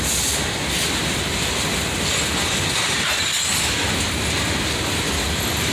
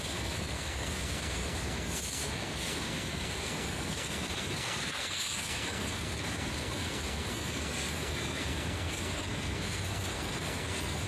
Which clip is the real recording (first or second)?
first